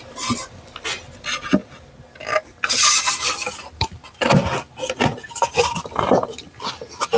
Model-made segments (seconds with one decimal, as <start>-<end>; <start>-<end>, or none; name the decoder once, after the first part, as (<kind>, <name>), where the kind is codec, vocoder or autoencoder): none

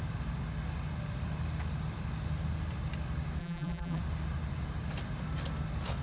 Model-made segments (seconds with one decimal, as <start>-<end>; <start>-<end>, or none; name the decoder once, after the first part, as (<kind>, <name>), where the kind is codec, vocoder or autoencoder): 3.4-4.0 (vocoder, BigVGAN v2)

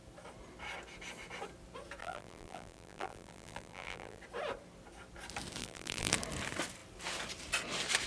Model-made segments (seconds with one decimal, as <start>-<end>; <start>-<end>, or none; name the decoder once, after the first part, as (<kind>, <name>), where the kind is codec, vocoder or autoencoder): 2.0-4.2 (vocoder, BigVGAN v2); 5.6-6.1

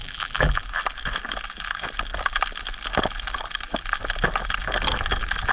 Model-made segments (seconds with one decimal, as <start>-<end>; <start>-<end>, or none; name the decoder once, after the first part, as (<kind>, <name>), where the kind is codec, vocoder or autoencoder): 0.0-0.6 (vocoder, BigVGAN v2)

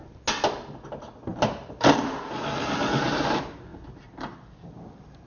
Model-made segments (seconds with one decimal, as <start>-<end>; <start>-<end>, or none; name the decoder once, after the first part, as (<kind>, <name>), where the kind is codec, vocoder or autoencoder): 1.3-2.2 (vocoder, BigVGAN v2); 3.7-5.3

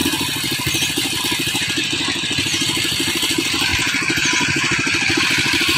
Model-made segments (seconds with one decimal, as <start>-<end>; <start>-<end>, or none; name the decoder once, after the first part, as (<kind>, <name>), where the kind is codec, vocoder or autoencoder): none

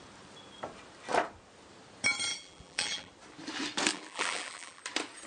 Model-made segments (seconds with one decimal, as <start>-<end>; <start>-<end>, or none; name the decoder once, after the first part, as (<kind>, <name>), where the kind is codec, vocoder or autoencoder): 2.3-3.1 (vocoder, BigVGAN v2); 3.9-4.8